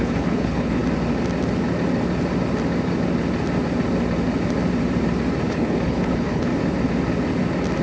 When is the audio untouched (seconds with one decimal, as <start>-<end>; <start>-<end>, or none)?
0.8-5.5; 6.5-7.8